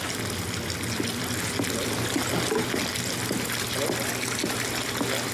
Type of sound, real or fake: real